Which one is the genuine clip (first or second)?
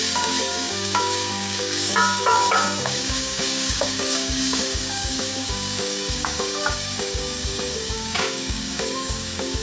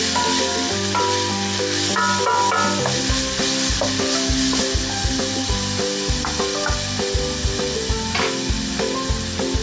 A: second